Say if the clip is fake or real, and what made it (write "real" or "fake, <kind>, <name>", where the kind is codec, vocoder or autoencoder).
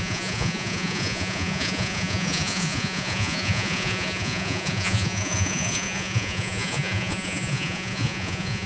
fake, vocoder, Vocos